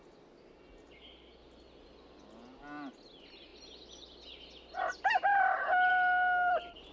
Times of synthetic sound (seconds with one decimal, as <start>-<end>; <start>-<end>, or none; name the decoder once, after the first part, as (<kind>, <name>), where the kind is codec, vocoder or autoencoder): none